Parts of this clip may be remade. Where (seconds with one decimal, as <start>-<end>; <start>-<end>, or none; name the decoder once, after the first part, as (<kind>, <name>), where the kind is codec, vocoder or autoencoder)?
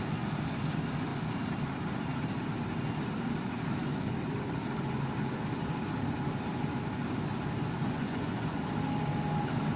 7.8-8.6 (vocoder, Vocos)